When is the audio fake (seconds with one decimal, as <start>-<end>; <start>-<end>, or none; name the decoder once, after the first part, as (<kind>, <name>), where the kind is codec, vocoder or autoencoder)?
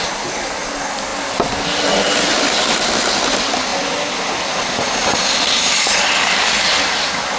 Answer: none